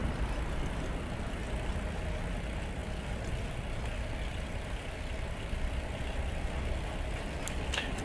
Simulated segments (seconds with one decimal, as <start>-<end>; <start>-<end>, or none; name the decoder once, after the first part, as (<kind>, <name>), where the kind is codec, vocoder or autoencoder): none